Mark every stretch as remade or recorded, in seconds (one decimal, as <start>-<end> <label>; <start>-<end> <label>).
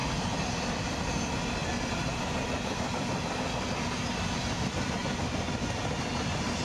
0.0-6.6 recorded